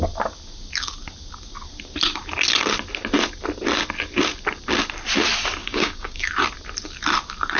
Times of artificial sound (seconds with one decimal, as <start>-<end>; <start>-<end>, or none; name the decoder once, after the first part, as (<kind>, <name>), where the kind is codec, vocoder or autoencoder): 5.6-6.3 (codec, DAC)

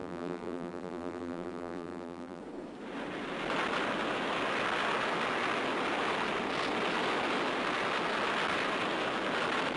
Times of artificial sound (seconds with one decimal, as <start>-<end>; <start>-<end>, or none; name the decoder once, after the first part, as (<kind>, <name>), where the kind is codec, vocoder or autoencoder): 0.0-2.4 (vocoder, BigVGAN v2)

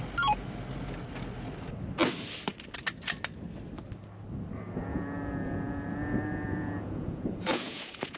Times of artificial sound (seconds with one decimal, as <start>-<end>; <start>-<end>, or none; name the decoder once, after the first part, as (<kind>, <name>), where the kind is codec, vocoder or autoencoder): 4.9-8.2 (vocoder, Vocos)

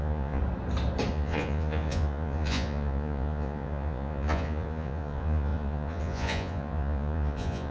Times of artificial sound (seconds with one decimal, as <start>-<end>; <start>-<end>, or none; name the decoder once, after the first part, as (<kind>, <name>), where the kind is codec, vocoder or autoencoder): 0.0-0.4 (vocoder, Vocos); 1.1-7.7

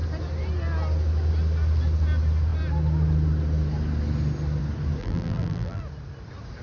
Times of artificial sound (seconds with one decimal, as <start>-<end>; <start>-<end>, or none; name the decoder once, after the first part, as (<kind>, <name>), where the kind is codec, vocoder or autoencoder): 5.0-5.8 (vocoder, BigVGAN v2)

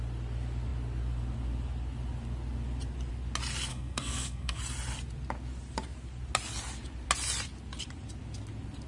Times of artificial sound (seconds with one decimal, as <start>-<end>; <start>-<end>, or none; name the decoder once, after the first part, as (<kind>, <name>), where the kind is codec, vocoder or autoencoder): 3.7-4.6 (codec, SNAC)

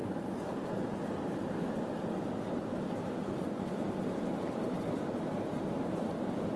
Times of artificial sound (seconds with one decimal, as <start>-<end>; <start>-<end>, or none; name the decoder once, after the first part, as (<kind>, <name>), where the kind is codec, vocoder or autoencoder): 0.0-1.0 (vocoder, Vocos); 3.2-3.9